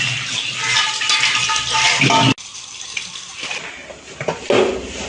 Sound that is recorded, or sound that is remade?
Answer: recorded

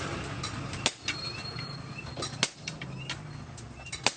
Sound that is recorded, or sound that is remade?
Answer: recorded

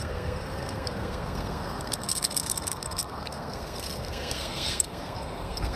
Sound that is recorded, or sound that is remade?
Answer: remade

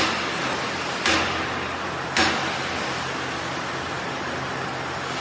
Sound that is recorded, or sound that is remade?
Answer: recorded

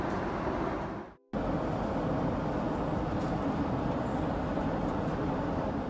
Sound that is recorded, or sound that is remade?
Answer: recorded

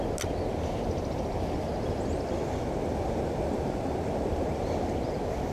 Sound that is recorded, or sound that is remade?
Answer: recorded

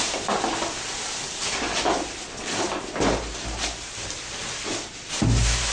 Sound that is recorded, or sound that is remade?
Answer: recorded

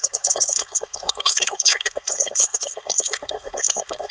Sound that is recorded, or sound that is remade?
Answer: remade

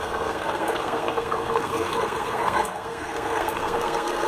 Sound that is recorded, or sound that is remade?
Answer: remade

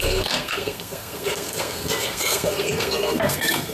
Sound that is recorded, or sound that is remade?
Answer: remade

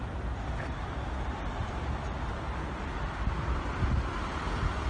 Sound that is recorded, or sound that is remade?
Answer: recorded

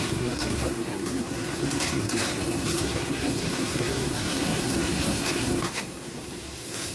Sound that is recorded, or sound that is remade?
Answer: remade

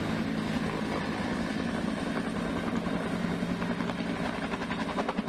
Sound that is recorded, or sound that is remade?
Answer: recorded